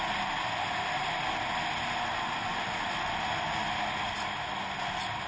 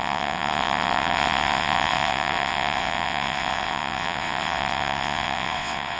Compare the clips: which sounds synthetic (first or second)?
second